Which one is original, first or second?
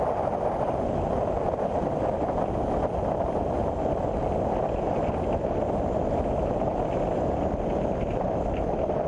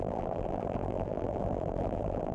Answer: first